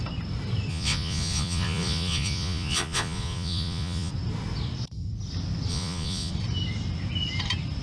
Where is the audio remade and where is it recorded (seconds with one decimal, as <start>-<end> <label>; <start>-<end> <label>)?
0.0-0.7 recorded; 0.7-4.1 remade; 4.1-5.7 recorded; 5.7-6.3 remade; 6.3-7.8 recorded